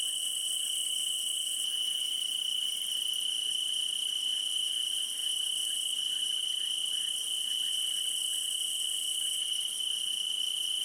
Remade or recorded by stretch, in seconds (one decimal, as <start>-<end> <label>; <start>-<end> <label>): 0.0-0.8 recorded; 0.8-1.6 remade; 1.6-5.2 recorded; 5.2-5.8 remade; 5.8-10.8 recorded